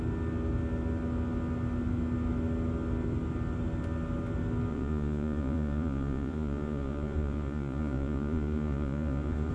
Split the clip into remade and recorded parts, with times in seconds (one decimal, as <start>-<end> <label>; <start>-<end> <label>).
0.0-4.7 recorded; 4.7-9.5 remade